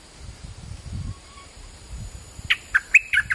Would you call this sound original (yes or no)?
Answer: no